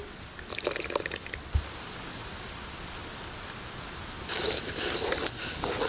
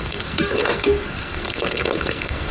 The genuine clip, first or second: first